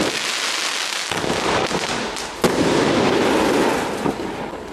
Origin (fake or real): real